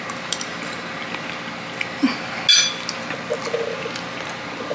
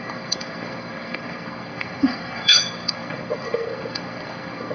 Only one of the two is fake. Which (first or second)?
second